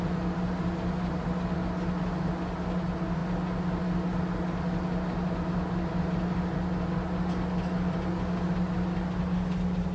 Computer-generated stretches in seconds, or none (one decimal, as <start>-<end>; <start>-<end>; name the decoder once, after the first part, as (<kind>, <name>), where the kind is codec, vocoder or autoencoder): none

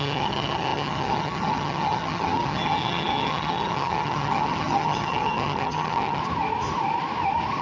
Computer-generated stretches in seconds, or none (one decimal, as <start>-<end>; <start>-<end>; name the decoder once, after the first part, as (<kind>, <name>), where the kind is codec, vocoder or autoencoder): 0.0-6.2 (vocoder, HiFi-GAN)

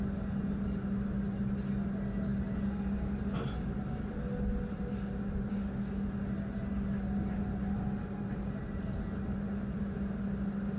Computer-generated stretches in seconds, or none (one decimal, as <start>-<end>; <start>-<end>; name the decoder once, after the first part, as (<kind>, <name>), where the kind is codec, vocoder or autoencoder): none

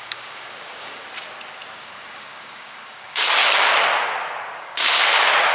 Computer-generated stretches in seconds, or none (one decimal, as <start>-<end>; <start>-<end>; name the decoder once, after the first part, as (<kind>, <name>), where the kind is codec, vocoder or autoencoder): 0.0-1.0 (codec, DAC); 1.7-3.4; 4.6-5.5

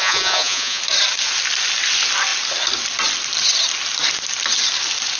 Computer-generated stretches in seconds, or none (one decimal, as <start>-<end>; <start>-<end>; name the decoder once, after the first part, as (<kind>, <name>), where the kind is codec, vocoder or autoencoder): 0.0-0.8 (vocoder, Vocos)

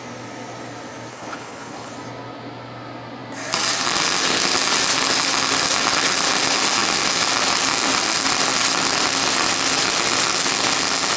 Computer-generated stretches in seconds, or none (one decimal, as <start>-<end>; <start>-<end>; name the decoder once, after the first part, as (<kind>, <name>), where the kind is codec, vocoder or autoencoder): 1.1-1.9 (codec, HILCodec)

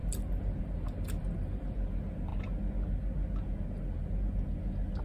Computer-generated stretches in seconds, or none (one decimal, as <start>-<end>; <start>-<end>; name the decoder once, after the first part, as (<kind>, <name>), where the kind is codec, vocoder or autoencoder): none

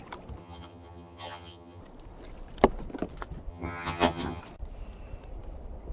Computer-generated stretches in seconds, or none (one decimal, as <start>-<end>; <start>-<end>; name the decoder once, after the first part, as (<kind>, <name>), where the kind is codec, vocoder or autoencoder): 0.4-1.8 (vocoder, HiFi-GAN); 3.5-4.4